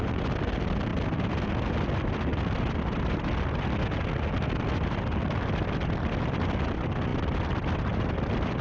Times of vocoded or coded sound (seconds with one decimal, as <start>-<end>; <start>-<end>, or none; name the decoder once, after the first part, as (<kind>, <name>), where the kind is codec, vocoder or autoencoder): 0.0-0.9 (vocoder, BigVGAN v2); 1.9-2.3; 5.0-8.6